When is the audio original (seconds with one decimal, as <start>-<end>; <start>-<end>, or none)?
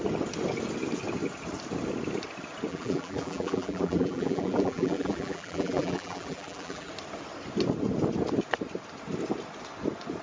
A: 0.0-2.7; 6.9-10.2